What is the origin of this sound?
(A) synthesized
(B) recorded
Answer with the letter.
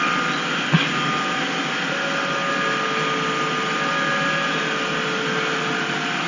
B